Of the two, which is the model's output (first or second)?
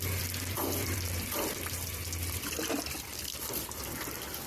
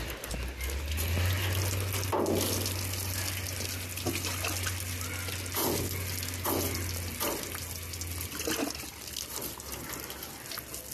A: first